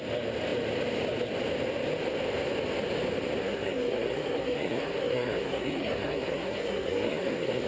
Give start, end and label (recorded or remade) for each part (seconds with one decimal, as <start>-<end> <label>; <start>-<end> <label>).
0.0-3.4 recorded; 3.4-7.7 remade

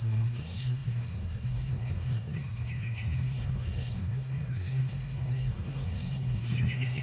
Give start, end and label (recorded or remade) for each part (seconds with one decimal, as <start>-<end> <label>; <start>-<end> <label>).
0.0-7.0 remade

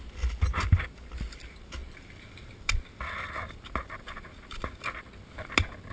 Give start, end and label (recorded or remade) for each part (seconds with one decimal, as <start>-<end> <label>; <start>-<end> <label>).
0.0-5.9 recorded

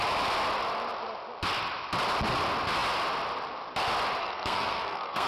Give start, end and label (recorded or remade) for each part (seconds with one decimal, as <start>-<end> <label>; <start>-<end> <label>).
0.0-4.2 recorded; 4.2-5.3 remade

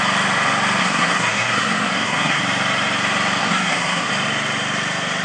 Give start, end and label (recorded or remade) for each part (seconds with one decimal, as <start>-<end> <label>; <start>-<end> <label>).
0.0-0.8 recorded; 0.8-2.4 remade; 2.4-3.4 recorded; 3.4-4.1 remade; 4.1-5.2 recorded